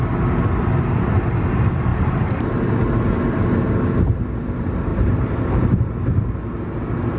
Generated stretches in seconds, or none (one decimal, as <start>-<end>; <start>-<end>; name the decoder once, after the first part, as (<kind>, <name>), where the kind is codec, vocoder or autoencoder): 1.9-2.5 (vocoder, BigVGAN v2); 4.9-5.8

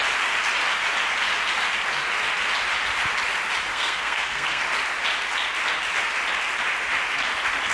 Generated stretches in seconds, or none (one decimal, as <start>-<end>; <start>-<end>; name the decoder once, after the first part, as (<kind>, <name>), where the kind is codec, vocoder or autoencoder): 3.7-4.6 (codec, SNAC)

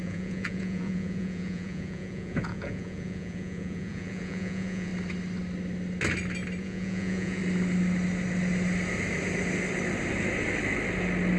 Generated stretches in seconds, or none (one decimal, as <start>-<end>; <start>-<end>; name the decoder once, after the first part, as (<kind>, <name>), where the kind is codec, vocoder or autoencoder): 0.0-4.9 (vocoder, Vocos); 6.6-7.4